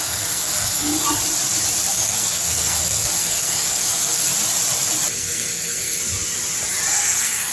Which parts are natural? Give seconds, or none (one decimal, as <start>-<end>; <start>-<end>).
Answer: 0.9-1.9; 4.3-5.1; 6.0-6.9